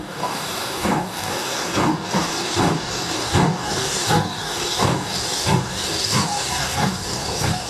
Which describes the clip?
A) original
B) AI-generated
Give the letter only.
B